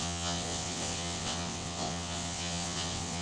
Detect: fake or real fake